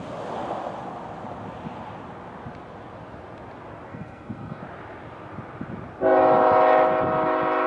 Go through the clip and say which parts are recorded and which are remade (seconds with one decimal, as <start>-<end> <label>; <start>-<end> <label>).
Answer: 0.0-3.9 recorded; 3.9-4.6 remade; 4.6-7.7 recorded